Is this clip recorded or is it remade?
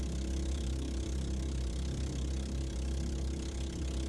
recorded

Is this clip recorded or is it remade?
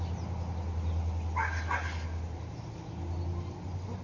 recorded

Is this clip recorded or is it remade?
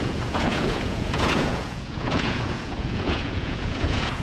remade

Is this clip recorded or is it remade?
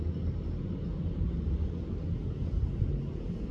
recorded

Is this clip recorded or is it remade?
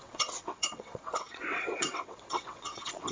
remade